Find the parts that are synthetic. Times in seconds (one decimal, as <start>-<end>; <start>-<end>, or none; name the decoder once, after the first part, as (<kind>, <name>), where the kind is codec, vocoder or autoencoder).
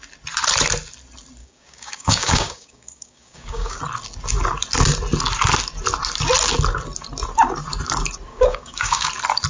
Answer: 1.4-3.8 (codec, DAC); 8.3-9.1